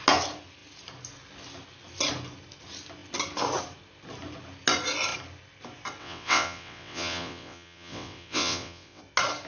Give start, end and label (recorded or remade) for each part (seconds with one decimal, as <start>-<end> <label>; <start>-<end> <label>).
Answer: 0.0-6.0 recorded; 6.0-9.0 remade; 9.0-9.5 recorded